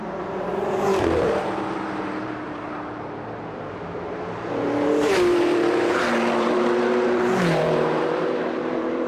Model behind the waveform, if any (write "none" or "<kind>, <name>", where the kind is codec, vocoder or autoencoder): vocoder, BigVGAN v2